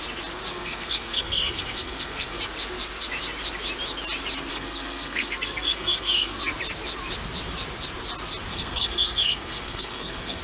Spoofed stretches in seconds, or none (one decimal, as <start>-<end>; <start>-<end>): 0.5-2.4; 4.5-6.4; 8.5-10.4